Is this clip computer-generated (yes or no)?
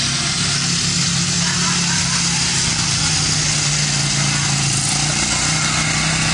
no